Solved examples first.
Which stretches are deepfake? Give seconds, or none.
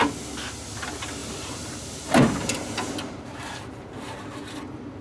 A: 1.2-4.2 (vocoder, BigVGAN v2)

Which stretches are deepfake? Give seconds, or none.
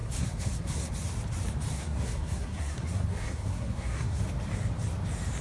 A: 0.0-0.9 (codec, SNAC); 1.7-4.2